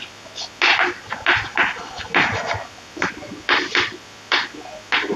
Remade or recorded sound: recorded